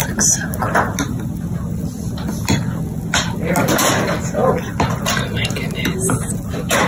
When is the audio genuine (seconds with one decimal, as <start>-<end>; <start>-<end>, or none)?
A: 0.0-6.9